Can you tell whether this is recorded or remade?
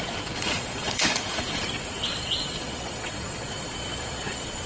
remade